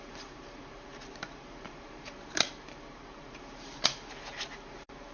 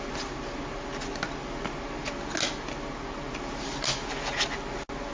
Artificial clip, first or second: first